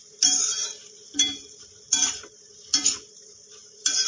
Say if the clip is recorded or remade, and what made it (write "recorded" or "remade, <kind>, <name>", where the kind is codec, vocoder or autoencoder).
remade, vocoder, BigVGAN v2